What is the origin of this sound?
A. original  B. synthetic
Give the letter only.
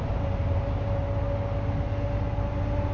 A